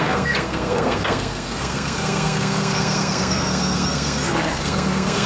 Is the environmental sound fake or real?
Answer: fake